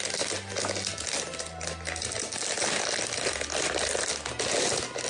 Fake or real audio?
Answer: real